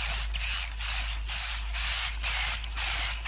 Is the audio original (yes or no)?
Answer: yes